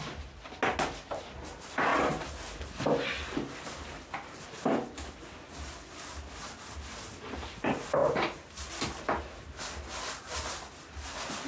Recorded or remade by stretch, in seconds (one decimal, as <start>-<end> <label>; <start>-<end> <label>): 0.0-8.0 recorded; 8.0-8.7 remade; 8.7-11.5 recorded